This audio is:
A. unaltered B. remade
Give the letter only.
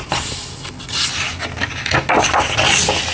A